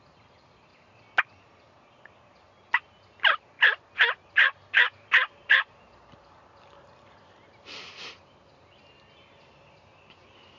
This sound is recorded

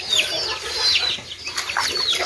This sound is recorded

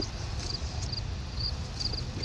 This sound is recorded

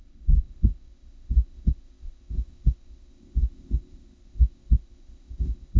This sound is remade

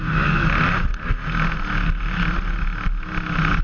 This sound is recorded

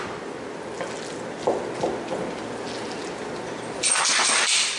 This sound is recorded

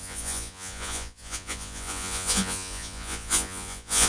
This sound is remade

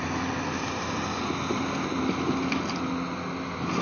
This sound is recorded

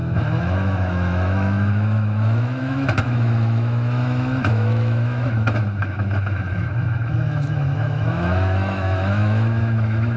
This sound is remade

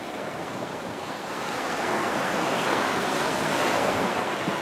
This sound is remade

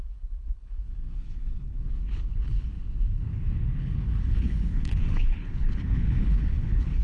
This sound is remade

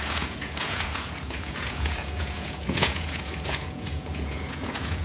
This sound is remade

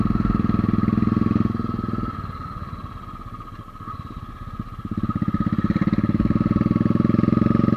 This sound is recorded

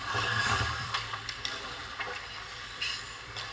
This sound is remade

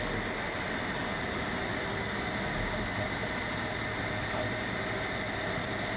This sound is recorded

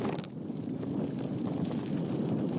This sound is recorded